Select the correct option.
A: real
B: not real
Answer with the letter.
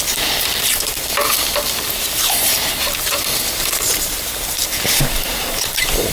B